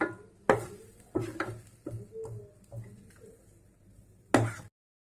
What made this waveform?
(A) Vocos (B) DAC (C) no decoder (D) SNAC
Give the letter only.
C